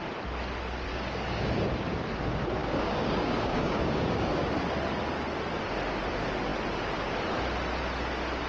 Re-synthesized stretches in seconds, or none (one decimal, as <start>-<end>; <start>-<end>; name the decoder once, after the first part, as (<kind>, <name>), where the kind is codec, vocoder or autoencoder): 0.9-1.5 (codec, DAC); 2.6-4.5